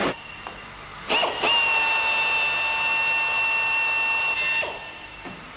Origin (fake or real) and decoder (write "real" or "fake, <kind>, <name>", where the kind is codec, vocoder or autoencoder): real